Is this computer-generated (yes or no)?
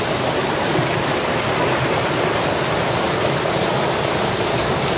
no